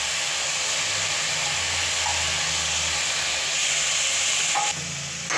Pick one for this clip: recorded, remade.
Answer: recorded